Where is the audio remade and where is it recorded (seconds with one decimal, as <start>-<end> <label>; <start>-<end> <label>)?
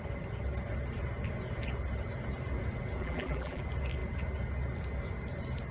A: 0.0-3.0 recorded; 3.0-3.6 remade; 3.6-5.7 recorded